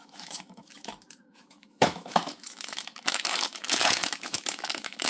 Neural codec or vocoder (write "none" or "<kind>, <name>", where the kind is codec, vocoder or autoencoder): autoencoder, DAC-VAE